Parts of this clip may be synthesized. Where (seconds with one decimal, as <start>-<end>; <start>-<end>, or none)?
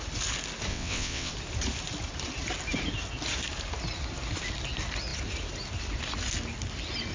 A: 0.7-1.3